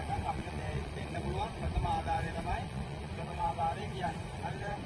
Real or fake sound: fake